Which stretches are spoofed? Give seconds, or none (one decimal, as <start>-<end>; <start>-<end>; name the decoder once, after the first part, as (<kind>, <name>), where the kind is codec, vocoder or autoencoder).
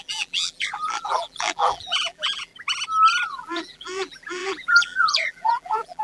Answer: 0.0-2.5 (vocoder, BigVGAN v2); 3.3-6.0